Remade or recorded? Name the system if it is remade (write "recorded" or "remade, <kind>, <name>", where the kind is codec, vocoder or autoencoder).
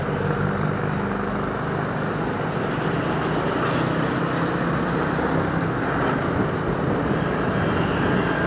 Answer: recorded